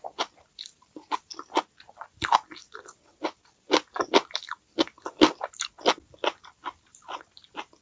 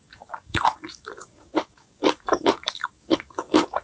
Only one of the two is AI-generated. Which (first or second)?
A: second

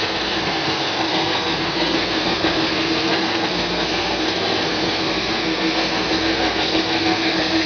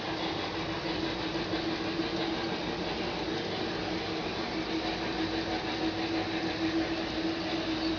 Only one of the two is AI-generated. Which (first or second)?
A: first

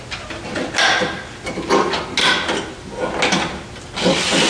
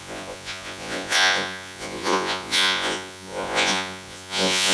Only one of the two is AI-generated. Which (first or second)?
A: second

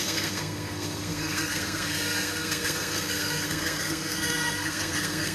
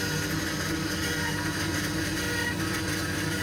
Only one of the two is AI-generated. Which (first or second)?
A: first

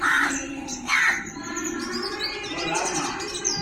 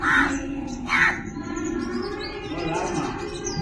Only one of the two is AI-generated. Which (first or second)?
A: first